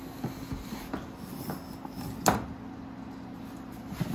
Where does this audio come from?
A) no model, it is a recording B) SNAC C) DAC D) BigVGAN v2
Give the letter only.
A